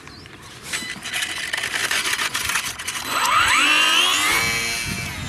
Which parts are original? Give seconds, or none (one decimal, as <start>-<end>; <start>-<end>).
0.0-1.8; 4.4-5.3